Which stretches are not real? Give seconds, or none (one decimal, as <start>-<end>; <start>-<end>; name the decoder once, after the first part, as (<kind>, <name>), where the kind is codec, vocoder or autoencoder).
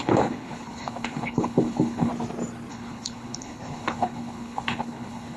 0.0-2.1 (codec, HILCodec); 2.7-5.4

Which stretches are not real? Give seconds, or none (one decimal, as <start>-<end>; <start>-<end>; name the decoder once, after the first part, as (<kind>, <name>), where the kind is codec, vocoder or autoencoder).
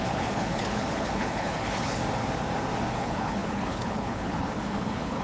0.0-2.0 (codec, HILCodec); 2.9-5.2